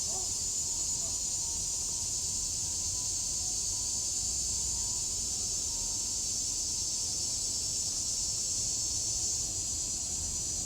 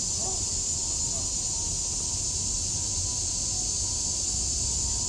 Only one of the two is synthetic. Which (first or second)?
second